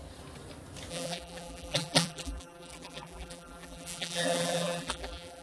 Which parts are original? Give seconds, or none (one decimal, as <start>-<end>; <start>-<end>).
0.0-0.9